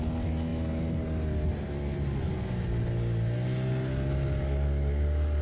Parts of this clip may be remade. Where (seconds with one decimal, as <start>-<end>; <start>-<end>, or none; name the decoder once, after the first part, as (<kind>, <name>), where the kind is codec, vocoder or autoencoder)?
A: none